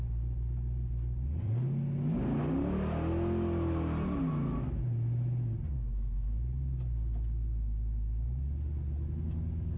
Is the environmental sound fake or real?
real